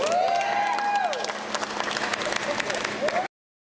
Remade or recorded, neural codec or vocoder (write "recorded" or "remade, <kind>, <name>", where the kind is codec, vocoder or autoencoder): recorded